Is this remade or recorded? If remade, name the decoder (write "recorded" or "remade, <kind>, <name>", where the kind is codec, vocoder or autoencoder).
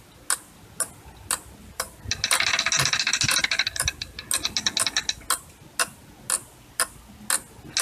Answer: recorded